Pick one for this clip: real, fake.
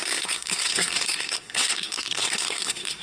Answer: fake